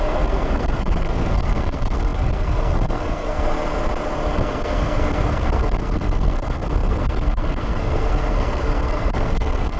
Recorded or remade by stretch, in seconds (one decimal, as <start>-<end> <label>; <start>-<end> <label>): 0.0-3.5 remade; 3.5-4.3 recorded; 4.3-9.8 remade

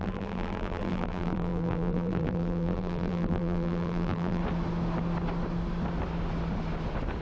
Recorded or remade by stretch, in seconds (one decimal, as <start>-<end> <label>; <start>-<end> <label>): 0.0-4.4 remade; 4.4-7.2 recorded

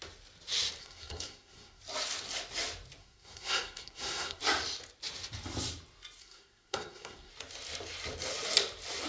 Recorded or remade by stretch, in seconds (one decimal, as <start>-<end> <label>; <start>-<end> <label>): 0.0-0.8 recorded; 0.8-1.8 remade; 1.8-3.0 recorded; 3.0-4.4 remade; 4.4-6.2 recorded; 6.2-7.3 remade; 7.3-9.1 recorded

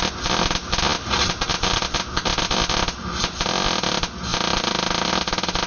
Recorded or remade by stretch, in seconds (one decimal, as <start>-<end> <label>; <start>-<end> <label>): 0.0-5.7 recorded

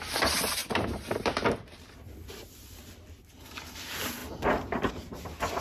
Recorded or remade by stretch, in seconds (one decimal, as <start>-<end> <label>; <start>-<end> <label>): 0.0-5.6 recorded

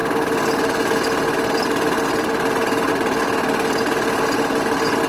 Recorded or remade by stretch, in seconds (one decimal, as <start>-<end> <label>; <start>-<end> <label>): 0.0-5.1 recorded

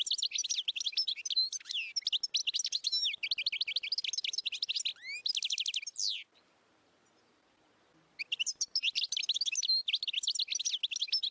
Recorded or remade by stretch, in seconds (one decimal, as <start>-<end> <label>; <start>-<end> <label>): 0.0-0.4 recorded; 0.4-1.7 remade; 1.7-8.2 recorded; 8.2-9.4 remade; 9.4-11.3 recorded

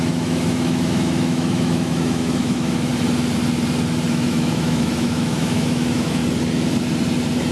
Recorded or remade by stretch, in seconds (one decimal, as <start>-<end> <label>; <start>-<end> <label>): 0.0-2.9 remade; 2.9-4.1 recorded; 4.1-6.2 remade; 6.2-7.5 recorded